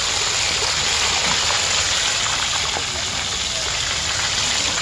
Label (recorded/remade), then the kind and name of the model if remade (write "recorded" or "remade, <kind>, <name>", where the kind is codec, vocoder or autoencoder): recorded